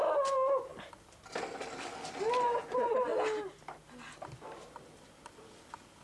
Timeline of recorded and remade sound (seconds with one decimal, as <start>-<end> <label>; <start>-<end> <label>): 0.0-6.0 recorded